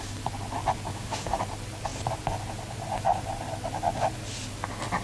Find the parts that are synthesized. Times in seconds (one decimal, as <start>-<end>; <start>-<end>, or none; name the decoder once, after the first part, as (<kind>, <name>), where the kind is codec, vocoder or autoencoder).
0.9-1.4 (autoencoder, DAC-VAE)